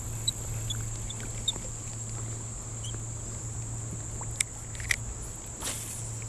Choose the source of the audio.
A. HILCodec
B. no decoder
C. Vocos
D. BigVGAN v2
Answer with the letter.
B